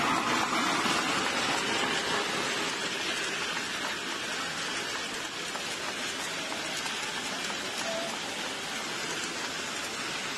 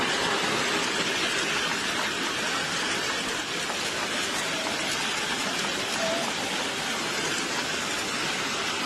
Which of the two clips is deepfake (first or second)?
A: second